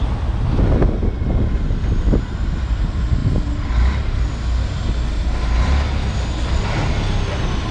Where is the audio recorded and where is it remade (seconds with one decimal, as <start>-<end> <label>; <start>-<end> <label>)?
0.0-7.7 recorded